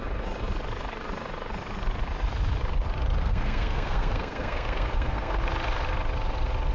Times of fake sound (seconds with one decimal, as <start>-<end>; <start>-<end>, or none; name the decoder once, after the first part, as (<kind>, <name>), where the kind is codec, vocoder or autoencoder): 3.2-5.4 (codec, SNAC)